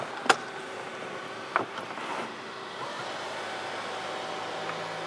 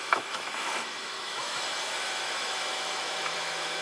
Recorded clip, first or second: first